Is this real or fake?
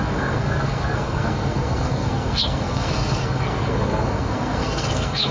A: fake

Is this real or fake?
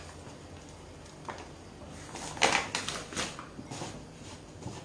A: real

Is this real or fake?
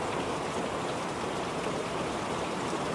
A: fake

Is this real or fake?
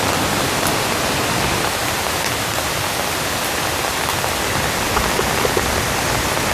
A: real